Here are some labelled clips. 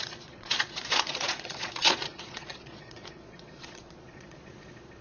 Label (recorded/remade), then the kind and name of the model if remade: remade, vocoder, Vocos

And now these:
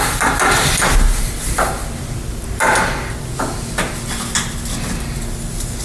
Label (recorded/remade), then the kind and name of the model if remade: recorded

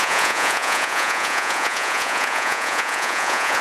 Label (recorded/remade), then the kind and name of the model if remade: remade, vocoder, Vocos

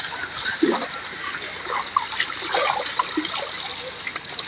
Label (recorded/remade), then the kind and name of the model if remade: recorded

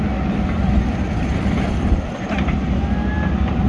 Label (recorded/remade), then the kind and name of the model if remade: recorded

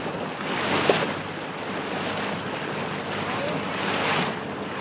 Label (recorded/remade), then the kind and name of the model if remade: recorded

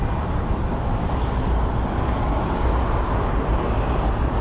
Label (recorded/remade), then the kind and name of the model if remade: recorded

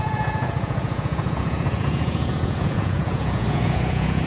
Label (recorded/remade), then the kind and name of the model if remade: remade, vocoder, Vocos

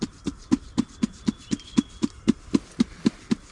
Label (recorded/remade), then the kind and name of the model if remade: recorded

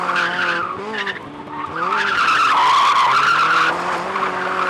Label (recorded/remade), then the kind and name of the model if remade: recorded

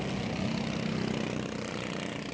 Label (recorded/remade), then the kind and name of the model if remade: recorded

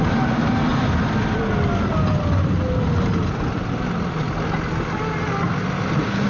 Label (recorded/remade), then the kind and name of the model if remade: recorded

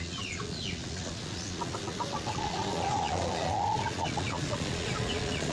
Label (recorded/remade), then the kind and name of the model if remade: remade, vocoder, Vocos